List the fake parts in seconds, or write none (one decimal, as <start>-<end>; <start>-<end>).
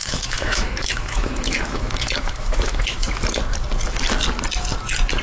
0.0-3.1